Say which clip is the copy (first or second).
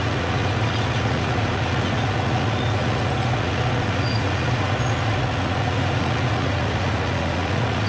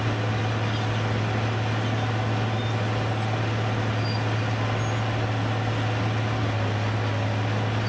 first